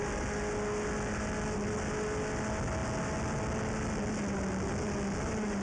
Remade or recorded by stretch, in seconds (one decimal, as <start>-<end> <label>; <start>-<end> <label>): 0.0-5.6 recorded